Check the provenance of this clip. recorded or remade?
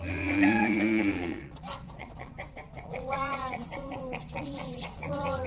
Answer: remade